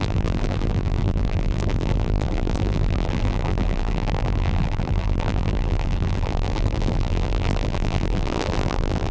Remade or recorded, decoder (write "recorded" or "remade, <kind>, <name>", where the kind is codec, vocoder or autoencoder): remade, vocoder, BigVGAN v2